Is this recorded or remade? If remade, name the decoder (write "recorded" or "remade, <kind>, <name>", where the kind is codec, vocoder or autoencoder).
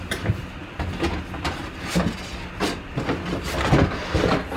recorded